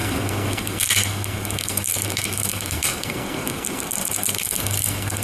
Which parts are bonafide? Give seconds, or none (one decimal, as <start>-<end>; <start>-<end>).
none

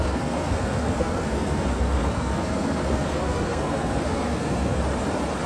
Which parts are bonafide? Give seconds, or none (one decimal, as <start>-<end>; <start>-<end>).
4.8-5.5

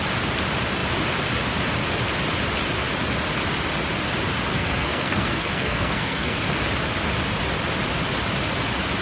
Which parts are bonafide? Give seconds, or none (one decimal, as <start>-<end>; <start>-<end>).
0.0-4.5; 6.4-9.0

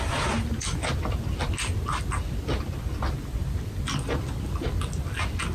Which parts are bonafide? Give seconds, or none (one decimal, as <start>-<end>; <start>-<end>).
0.0-5.5

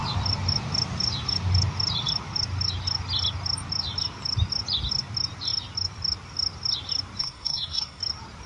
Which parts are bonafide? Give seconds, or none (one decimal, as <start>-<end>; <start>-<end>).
0.0-7.2; 8.0-8.5